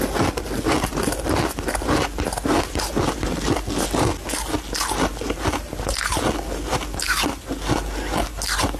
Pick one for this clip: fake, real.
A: real